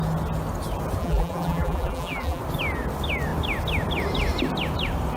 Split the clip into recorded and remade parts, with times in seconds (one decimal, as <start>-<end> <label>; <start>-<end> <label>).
0.0-1.0 recorded; 1.0-2.4 remade; 2.4-5.2 recorded